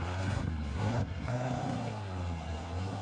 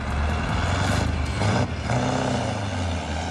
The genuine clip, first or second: second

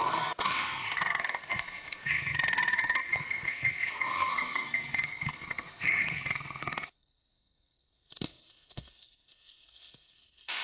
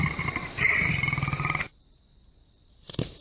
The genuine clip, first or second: second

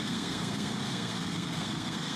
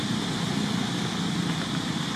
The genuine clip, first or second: second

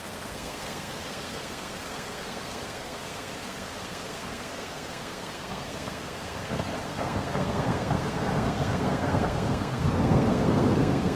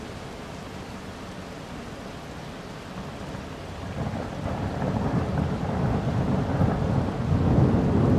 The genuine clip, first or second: second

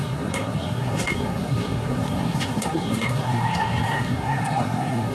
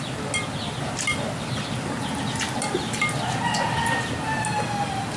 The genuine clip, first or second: second